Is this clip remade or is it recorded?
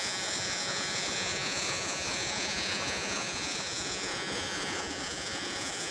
remade